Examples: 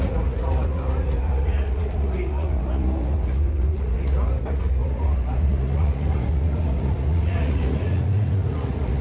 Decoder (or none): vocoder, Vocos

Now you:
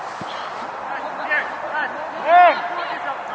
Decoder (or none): none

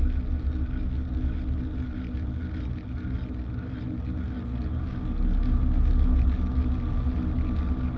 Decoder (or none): none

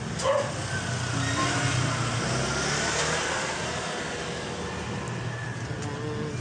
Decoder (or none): none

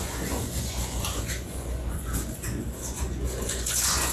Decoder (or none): vocoder, Vocos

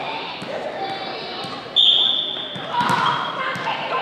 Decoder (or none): none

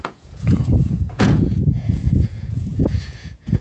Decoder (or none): vocoder, Vocos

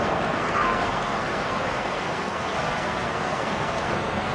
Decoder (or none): codec, SNAC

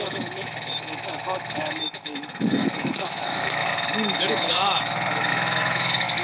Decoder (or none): autoencoder, DAC-VAE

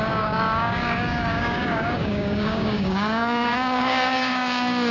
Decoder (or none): codec, DAC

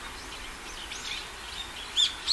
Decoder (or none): none